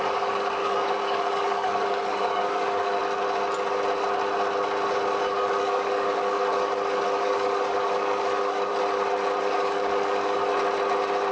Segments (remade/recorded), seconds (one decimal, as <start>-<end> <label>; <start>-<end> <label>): 0.0-3.0 remade; 3.0-5.2 recorded; 5.2-8.7 remade; 8.7-9.4 recorded; 9.4-10.5 remade; 10.5-11.3 recorded